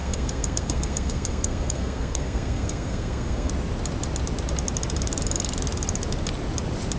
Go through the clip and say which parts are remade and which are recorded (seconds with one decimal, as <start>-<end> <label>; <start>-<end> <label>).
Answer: 0.0-3.5 remade; 3.5-7.0 recorded